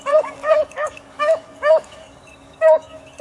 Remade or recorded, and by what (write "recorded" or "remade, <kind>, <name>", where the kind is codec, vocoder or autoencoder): remade, codec, DAC